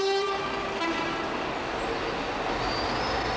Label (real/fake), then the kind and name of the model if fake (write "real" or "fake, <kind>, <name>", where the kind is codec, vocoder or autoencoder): real